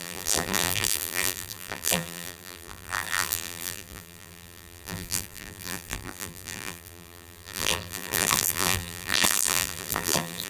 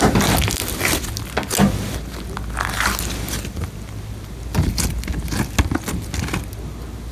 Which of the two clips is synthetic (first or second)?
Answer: first